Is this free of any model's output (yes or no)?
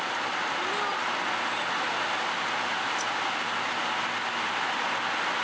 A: yes